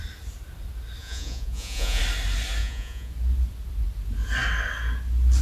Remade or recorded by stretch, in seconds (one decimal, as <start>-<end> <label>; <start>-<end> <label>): 0.0-1.0 recorded; 1.0-2.0 remade; 2.0-2.6 recorded; 2.6-3.1 remade; 3.1-5.4 recorded